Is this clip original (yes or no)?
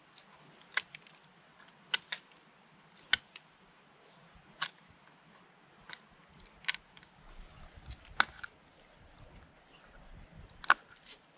yes